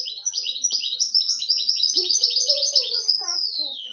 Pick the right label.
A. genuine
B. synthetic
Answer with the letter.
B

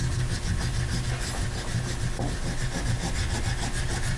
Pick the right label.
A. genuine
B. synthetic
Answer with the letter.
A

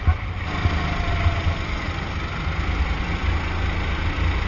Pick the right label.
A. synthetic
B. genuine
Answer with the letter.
B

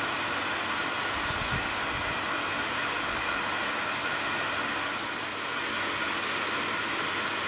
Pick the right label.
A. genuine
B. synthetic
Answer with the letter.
A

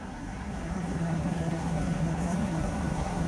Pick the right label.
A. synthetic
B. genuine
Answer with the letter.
A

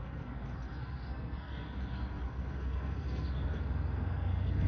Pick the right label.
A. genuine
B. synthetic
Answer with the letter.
B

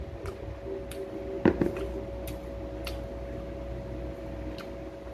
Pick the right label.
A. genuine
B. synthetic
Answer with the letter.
A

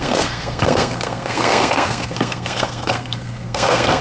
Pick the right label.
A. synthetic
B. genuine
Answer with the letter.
A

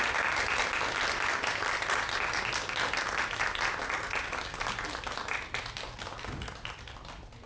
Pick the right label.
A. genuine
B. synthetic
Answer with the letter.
A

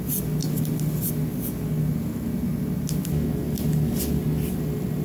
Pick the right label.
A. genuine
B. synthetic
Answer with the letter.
A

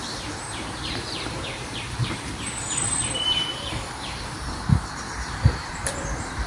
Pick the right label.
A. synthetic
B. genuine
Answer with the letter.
A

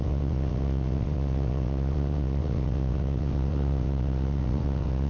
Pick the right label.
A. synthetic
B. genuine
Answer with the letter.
A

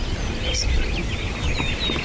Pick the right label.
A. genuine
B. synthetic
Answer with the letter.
A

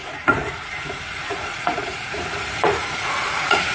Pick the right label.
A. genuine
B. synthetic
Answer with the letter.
B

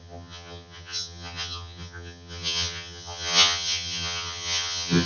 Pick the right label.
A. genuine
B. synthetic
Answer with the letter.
B